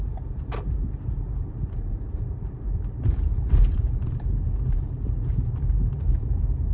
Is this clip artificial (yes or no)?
yes